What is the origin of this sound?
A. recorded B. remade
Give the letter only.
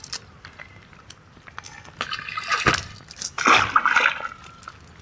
A